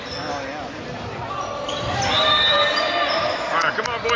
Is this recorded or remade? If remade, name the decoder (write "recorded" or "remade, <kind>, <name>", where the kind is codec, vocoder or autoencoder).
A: recorded